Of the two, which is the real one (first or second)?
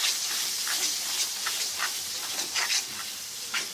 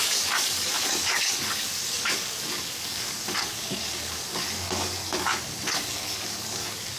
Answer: first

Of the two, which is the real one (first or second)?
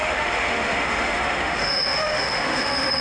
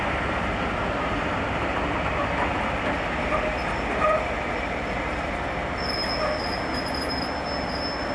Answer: second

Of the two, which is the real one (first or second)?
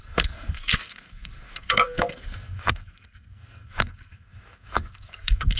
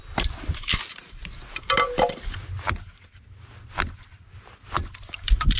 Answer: second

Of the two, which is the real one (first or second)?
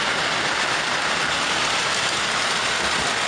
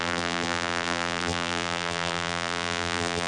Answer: first